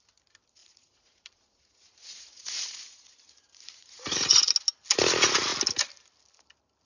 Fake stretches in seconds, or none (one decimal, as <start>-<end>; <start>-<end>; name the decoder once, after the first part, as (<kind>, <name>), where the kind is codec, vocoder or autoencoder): 0.6-4.5 (vocoder, Vocos)